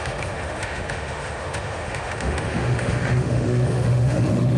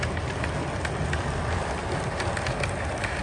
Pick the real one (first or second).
second